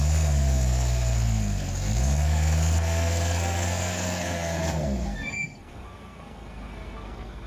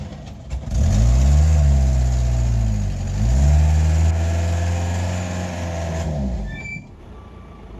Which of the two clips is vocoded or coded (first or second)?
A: first